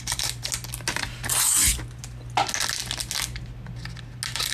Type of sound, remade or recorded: recorded